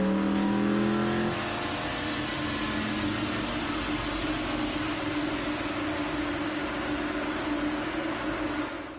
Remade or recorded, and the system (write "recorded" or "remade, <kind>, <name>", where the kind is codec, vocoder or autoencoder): recorded